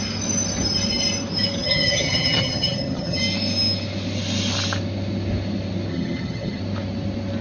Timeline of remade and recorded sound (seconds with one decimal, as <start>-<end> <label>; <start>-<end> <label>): 0.0-1.6 recorded; 1.6-3.2 remade; 3.2-5.9 recorded; 5.9-6.6 remade; 6.6-7.4 recorded